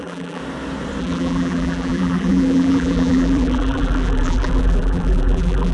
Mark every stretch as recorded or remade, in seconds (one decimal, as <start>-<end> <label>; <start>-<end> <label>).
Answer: 0.0-0.4 remade; 0.4-1.0 recorded; 1.0-5.7 remade